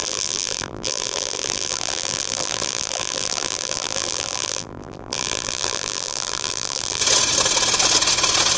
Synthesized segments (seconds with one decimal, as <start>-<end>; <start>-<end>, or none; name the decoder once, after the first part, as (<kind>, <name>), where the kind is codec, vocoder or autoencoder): 0.0-7.0 (vocoder, BigVGAN v2)